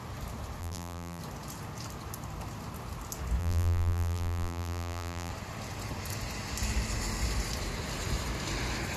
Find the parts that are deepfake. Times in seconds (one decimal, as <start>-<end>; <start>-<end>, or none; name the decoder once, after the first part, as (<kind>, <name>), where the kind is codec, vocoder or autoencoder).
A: 0.6-1.2 (vocoder, BigVGAN v2); 3.4-5.3